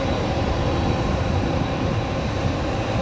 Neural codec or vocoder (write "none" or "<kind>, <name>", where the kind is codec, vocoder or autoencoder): vocoder, BigVGAN v2